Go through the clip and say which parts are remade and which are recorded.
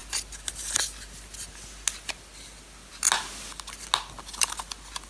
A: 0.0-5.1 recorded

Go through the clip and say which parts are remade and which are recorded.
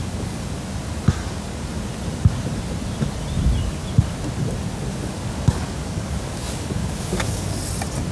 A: 0.0-0.6 remade; 0.6-1.2 recorded; 1.2-1.7 remade; 1.7-4.9 recorded; 4.9-7.6 remade; 7.6-8.1 recorded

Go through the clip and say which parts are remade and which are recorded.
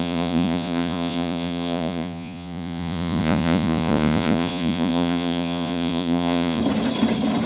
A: 0.0-6.6 remade; 6.6-7.5 recorded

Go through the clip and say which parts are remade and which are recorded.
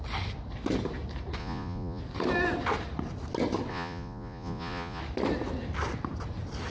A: 0.0-1.4 recorded; 1.4-2.0 remade; 2.0-3.7 recorded; 3.7-5.0 remade; 5.0-6.7 recorded